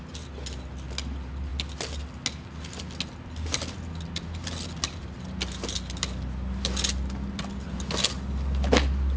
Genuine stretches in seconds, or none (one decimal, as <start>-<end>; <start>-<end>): 0.0-9.2